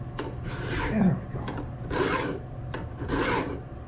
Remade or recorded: recorded